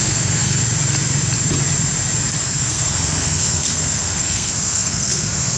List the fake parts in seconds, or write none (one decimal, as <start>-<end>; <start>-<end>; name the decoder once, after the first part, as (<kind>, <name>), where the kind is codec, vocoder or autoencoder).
0.0-0.6 (codec, SNAC); 2.4-5.6